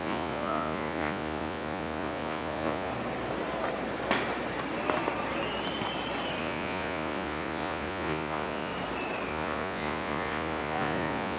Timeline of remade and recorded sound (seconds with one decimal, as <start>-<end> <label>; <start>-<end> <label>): 0.0-2.9 remade; 2.9-6.4 recorded; 6.4-8.7 remade; 8.7-9.3 recorded; 9.3-11.4 remade